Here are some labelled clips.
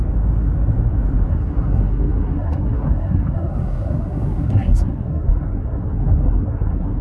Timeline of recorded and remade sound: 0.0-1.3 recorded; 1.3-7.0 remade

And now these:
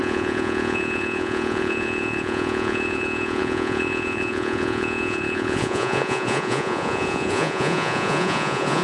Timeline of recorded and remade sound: 0.0-8.8 remade

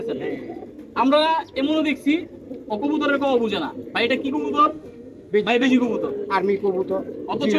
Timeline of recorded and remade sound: 0.0-4.6 recorded; 4.6-5.7 remade; 5.7-7.6 recorded

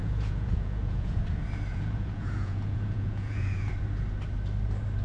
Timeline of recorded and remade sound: 0.0-1.2 remade; 1.2-1.7 recorded; 1.7-3.7 remade; 3.7-5.0 recorded

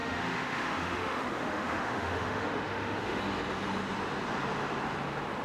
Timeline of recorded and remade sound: 0.0-3.2 remade; 3.2-5.4 recorded